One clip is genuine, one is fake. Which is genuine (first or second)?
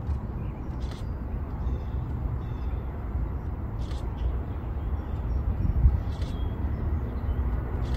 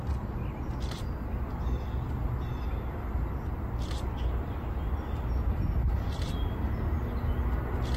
second